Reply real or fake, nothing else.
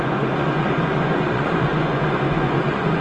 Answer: fake